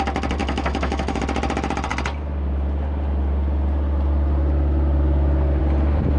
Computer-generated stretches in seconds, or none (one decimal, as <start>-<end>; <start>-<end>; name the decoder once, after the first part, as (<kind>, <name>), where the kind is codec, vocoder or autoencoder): 0.4-1.2 (autoencoder, DAC-VAE)